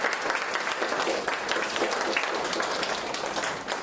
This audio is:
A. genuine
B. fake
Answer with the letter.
A